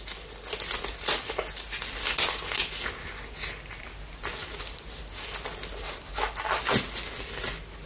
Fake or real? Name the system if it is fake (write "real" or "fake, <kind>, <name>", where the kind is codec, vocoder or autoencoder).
real